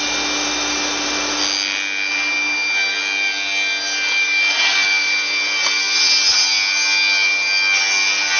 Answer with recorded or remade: recorded